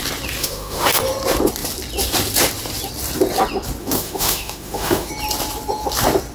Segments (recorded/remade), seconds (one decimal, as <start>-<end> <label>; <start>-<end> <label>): 0.0-0.4 recorded; 0.4-1.0 remade; 1.0-3.8 recorded; 3.8-5.1 remade; 5.1-6.3 recorded